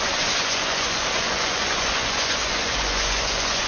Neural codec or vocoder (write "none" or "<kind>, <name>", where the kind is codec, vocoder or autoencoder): vocoder, Vocos